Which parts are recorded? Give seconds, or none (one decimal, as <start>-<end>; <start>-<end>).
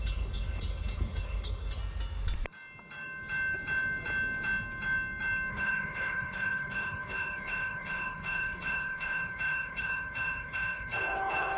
1.8-5.5